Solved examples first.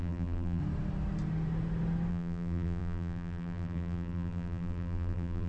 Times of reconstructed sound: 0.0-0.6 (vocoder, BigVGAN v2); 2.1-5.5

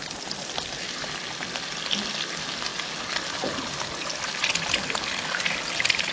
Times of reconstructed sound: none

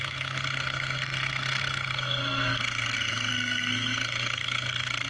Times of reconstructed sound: 0.0-5.1 (codec, SNAC)

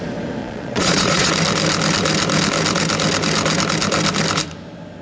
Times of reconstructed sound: 0.4-1.3 (vocoder, Vocos)

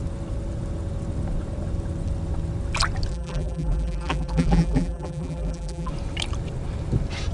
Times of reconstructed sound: 3.1-5.9 (vocoder, BigVGAN v2)

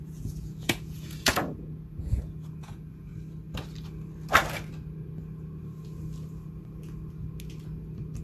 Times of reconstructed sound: 0.0-3.1 (vocoder, Vocos)

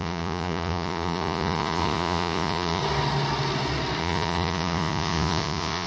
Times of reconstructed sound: 0.0-2.8 (vocoder, Vocos); 4.0-5.9